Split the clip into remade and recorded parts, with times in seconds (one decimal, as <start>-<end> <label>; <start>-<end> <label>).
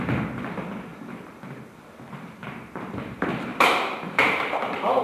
0.0-2.4 recorded; 2.4-3.1 remade; 3.1-3.5 recorded; 3.5-5.0 remade